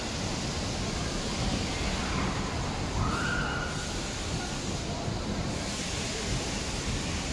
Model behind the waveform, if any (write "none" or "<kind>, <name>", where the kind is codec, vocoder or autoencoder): none